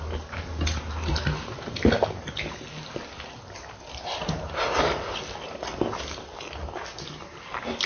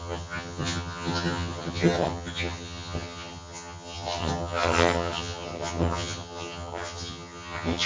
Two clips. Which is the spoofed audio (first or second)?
second